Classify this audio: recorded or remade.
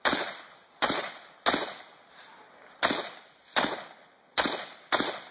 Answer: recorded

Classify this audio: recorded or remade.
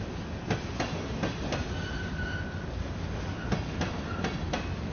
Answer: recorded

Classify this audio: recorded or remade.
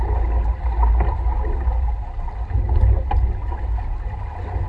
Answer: recorded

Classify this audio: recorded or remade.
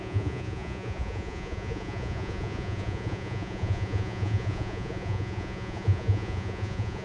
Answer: remade